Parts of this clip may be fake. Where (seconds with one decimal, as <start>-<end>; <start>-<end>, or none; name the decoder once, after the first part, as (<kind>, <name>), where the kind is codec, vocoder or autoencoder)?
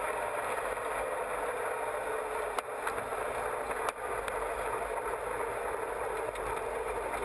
none